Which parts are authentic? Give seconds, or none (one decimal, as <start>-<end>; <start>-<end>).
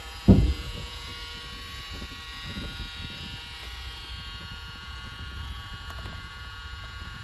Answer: 1.1-4.4